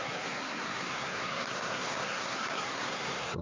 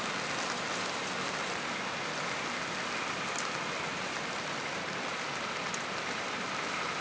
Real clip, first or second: second